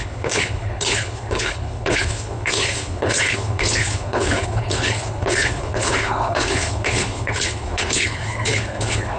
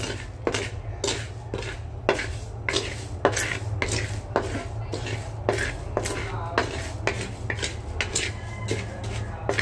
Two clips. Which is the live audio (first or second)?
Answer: second